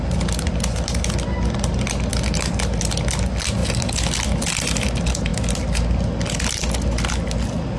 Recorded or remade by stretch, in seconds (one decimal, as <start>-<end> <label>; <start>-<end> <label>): 0.0-7.8 recorded